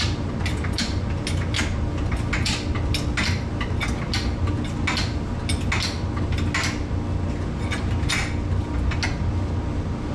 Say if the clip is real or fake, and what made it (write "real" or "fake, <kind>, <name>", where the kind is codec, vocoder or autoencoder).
real